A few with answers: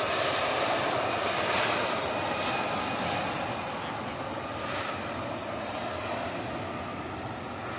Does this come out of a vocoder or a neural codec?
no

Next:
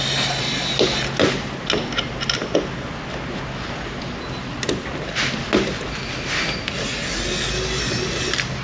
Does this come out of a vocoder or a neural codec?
no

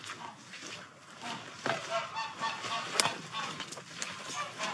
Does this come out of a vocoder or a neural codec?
no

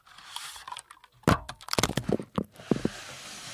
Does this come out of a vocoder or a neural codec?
no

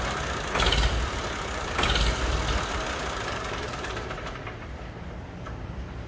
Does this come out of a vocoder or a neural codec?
yes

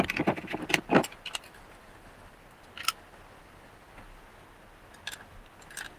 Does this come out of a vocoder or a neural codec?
no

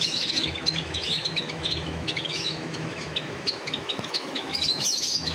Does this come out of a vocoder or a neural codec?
yes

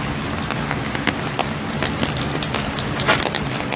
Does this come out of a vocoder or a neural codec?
no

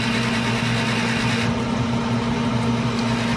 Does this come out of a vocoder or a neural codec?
no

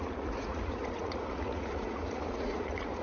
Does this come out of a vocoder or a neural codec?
yes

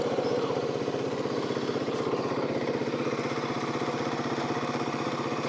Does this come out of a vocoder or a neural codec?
yes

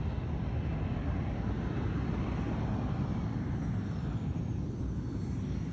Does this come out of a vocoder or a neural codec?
no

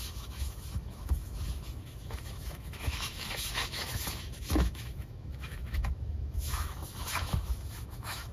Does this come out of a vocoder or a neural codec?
yes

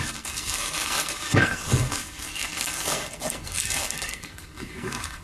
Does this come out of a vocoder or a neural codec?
yes